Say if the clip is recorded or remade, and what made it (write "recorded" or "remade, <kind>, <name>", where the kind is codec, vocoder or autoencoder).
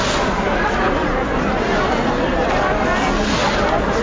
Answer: recorded